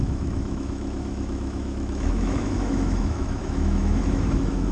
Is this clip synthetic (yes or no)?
yes